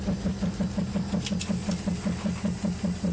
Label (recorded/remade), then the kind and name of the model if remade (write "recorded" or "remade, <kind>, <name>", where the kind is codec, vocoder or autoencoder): recorded